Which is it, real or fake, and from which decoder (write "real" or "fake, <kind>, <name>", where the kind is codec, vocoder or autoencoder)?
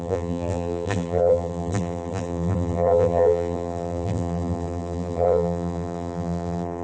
fake, vocoder, BigVGAN v2